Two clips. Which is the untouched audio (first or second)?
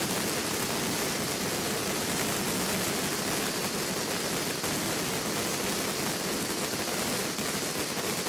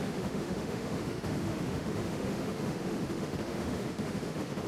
first